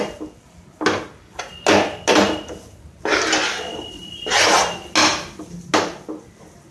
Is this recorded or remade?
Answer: recorded